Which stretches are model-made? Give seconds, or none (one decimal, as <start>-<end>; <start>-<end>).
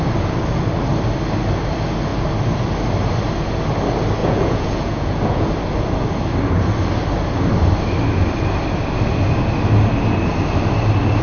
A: 4.2-5.5